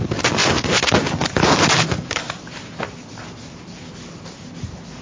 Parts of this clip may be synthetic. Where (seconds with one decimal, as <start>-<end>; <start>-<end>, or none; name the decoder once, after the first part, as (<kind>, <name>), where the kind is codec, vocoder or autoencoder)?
none